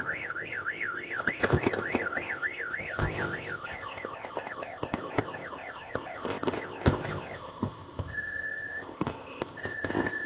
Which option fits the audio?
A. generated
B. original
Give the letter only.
A